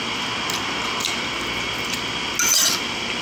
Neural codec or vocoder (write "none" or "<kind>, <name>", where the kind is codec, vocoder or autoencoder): none